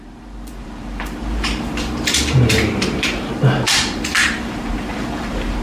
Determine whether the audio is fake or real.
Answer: fake